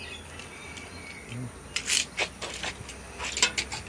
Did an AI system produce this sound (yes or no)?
no